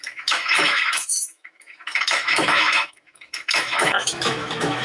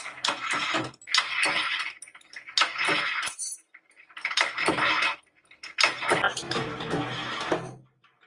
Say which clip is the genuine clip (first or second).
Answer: second